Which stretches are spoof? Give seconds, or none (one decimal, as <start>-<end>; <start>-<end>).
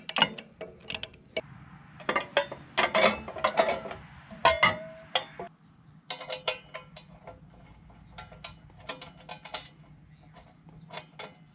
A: none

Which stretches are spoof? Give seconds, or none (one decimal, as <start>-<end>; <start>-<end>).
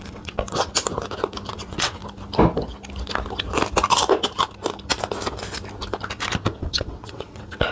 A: 0.0-0.7; 1.5-2.0; 6.6-7.7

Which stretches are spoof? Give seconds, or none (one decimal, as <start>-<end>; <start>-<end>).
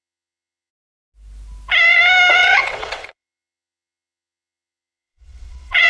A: 0.0-0.7; 2.3-5.9